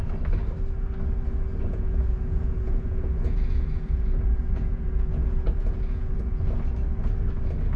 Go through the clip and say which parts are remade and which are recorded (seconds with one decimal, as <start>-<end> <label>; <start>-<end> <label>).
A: 0.0-1.7 recorded; 1.7-6.4 remade; 6.4-7.8 recorded